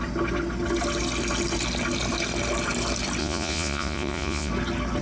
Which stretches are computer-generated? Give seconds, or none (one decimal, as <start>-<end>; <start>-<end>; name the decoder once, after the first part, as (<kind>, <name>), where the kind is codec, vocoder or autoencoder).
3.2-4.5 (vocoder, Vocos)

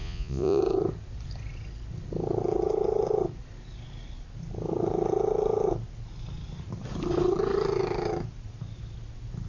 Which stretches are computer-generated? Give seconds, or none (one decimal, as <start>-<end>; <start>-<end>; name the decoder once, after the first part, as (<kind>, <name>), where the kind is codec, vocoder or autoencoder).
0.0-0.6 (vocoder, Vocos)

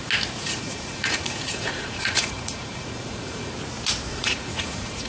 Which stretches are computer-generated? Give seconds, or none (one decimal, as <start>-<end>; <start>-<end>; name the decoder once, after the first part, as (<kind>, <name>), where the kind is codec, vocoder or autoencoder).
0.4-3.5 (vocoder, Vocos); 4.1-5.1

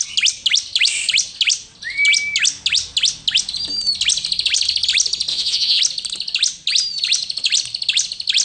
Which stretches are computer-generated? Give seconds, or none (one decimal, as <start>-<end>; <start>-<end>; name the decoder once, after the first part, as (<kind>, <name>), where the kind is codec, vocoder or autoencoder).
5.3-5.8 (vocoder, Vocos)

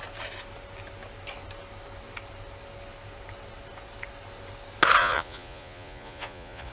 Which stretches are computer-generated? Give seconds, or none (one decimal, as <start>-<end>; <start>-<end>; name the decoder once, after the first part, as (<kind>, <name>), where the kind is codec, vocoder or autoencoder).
5.0-6.7 (vocoder, Vocos)